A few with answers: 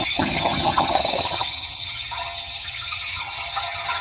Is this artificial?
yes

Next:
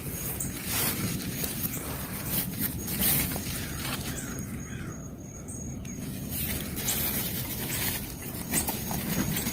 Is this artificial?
yes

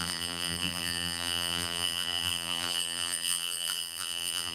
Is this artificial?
yes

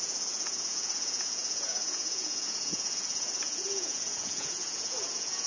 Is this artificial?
yes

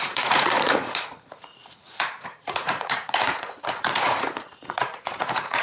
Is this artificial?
yes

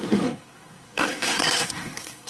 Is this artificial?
yes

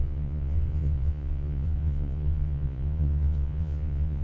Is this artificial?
yes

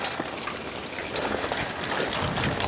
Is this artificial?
no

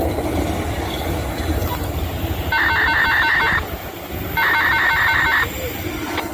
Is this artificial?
no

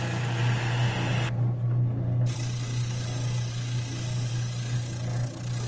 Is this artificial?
no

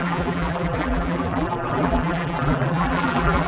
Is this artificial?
yes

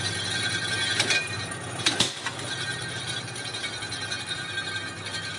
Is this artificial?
no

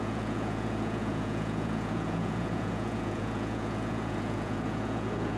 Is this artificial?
yes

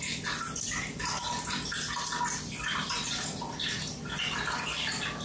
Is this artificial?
no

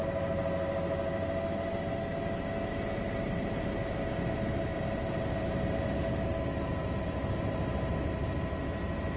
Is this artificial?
no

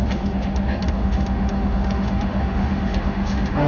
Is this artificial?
yes